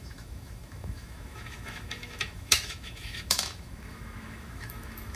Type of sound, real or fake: fake